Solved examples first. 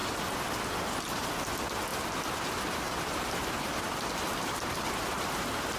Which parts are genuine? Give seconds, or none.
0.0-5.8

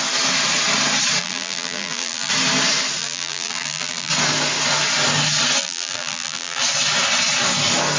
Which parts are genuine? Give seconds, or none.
0.0-1.2; 2.3-3.0; 4.1-5.6; 6.6-8.0

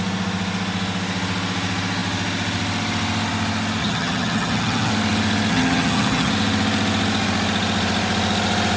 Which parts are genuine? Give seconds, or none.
0.0-3.8; 4.9-5.5; 6.3-8.8

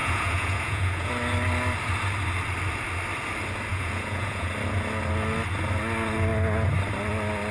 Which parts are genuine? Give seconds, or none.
1.1-3.7; 4.5-7.5

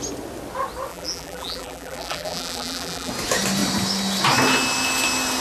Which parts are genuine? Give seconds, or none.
0.0-0.9; 3.1-5.4

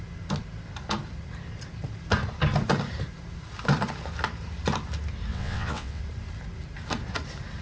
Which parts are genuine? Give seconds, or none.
0.0-5.3; 6.0-7.6